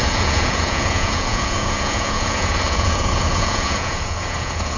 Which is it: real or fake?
fake